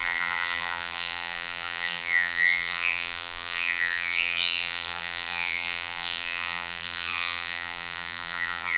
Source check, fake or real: fake